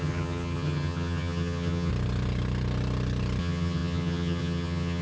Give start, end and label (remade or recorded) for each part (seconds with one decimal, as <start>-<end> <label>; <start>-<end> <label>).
0.0-1.9 remade; 1.9-3.4 recorded; 3.4-5.0 remade